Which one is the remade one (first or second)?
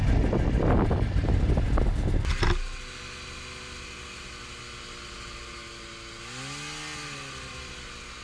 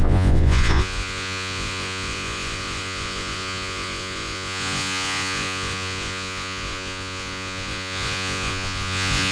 second